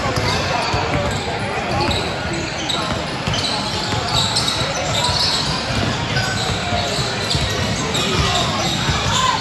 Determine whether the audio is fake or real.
real